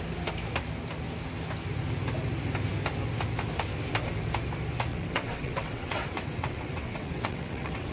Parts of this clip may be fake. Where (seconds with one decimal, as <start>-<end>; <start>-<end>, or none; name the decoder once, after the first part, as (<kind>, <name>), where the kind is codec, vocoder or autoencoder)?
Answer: 4.9-7.9 (vocoder, WaveNeXt)